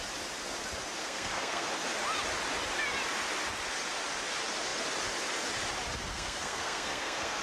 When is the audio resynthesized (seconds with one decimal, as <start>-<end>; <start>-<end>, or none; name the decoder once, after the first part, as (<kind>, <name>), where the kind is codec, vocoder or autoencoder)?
1.0-1.7 (codec, SNAC); 6.1-7.4